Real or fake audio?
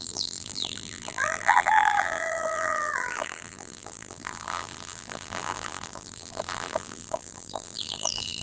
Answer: fake